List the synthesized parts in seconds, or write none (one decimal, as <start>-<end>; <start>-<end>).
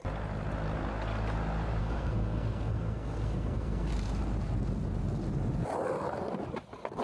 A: 1.8-3.9